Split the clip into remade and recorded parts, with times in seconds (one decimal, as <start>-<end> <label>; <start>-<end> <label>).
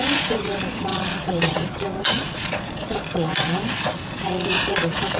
0.0-5.2 remade